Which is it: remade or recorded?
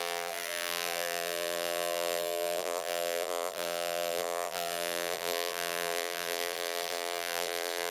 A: remade